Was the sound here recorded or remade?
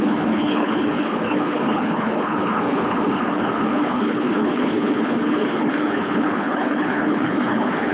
remade